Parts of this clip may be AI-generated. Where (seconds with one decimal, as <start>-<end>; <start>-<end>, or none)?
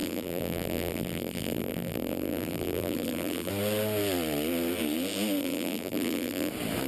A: 0.0-3.5; 5.4-6.5